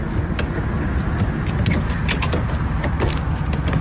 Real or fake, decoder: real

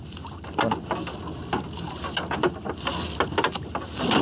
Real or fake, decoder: real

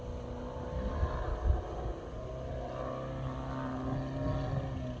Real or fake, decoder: real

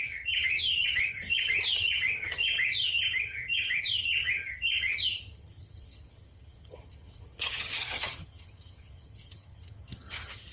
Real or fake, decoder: fake, vocoder, HiFi-GAN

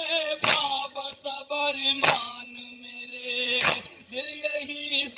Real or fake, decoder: fake, vocoder, HiFi-GAN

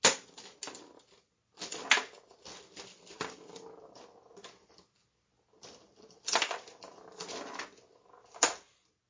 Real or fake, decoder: real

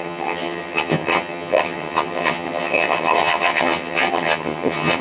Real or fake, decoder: fake, vocoder, HiFi-GAN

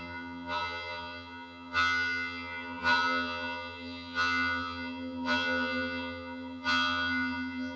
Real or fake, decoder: fake, vocoder, HiFi-GAN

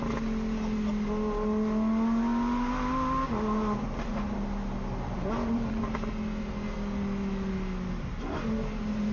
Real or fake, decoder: real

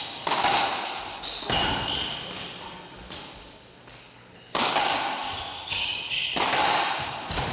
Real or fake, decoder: real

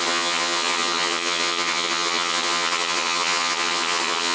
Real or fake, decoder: fake, vocoder, HiFi-GAN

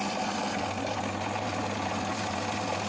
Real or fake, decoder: real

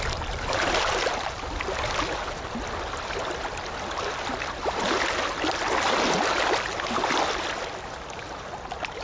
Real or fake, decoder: real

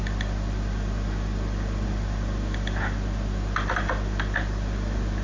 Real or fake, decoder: real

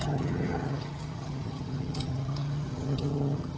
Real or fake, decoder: fake, vocoder, HiFi-GAN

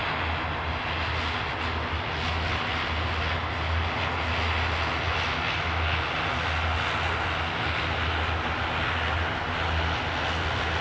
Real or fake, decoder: real